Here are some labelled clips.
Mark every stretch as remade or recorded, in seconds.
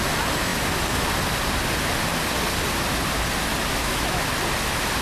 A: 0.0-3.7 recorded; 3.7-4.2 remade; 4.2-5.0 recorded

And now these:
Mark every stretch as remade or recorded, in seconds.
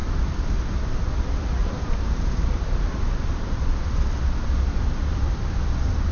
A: 0.0-1.6 recorded; 1.6-3.0 remade; 3.0-6.1 recorded